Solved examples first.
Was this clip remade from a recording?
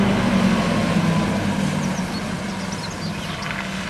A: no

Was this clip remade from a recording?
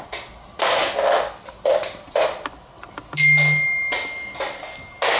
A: no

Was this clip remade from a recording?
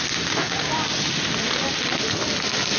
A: no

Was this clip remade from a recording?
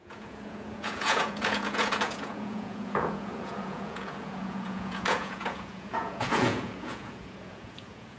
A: yes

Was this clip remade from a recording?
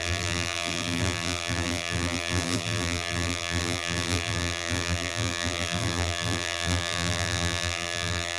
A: yes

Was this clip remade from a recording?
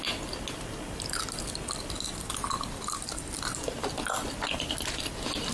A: no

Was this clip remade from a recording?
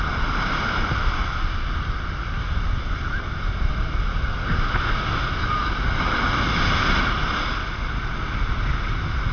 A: no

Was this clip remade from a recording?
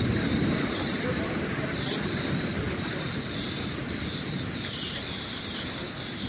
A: no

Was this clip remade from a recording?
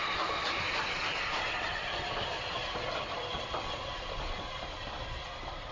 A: yes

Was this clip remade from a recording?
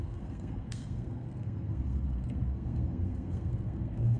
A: yes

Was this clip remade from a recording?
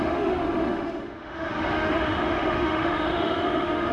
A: yes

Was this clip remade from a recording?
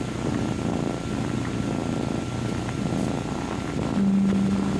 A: no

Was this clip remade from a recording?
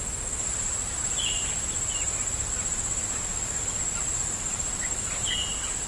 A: no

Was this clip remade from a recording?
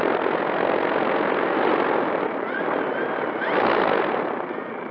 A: no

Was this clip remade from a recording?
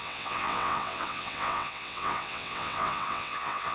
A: yes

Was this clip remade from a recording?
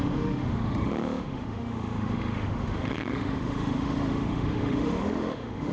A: yes